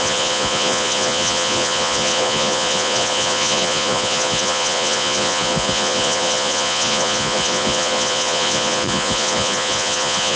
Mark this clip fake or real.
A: fake